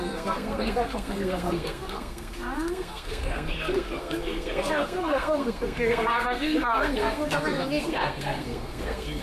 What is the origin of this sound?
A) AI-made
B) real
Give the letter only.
A